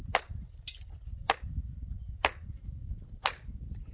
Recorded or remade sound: recorded